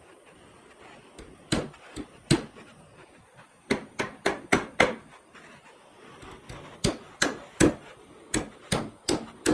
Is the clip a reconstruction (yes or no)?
no